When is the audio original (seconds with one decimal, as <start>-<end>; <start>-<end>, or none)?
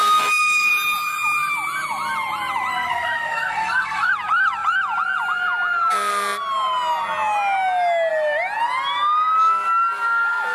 0.7-2.7; 4.1-10.5